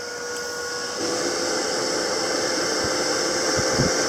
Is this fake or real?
real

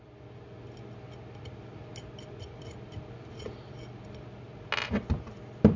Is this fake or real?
real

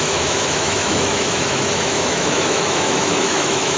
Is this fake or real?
fake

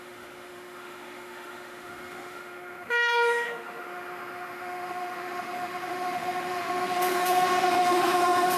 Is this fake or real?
fake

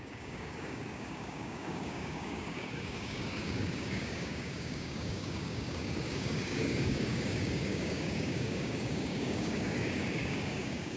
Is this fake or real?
fake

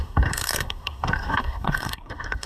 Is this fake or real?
fake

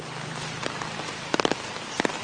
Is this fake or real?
fake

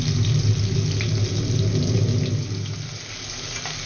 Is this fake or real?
real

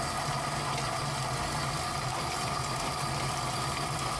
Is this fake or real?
real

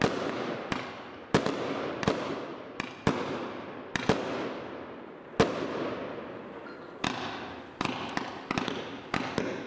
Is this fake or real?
real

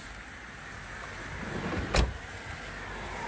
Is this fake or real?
real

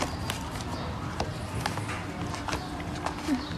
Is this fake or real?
real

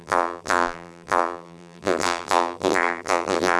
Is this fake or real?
fake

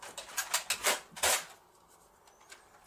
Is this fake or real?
real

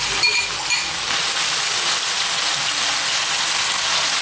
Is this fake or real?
real